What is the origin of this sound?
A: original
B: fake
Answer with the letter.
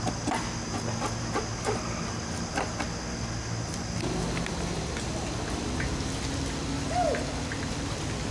A